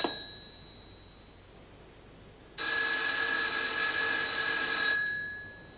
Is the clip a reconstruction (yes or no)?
no